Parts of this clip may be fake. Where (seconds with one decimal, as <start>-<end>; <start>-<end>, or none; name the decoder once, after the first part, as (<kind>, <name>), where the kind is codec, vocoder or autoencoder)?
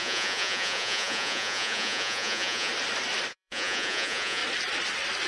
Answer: 0.0-2.7 (vocoder, Vocos); 3.3-4.4